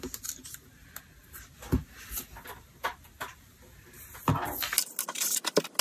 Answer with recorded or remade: recorded